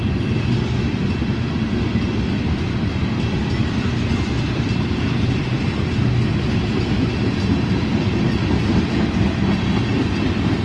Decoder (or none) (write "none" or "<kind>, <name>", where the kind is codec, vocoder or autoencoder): none